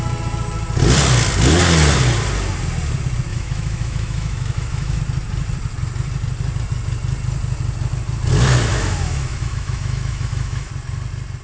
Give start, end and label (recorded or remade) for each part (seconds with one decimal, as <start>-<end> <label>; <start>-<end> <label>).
0.0-3.3 recorded; 3.3-5.0 remade; 5.0-8.7 recorded; 8.7-10.7 remade; 10.7-11.4 recorded